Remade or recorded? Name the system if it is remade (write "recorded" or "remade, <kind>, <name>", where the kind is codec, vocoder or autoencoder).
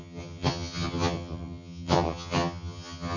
remade, vocoder, HiFi-GAN